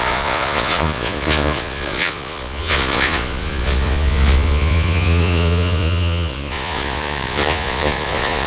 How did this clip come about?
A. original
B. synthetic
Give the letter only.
B